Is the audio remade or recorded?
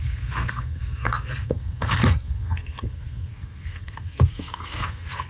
remade